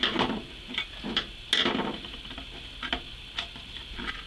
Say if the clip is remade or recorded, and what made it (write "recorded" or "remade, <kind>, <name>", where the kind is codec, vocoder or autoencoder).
recorded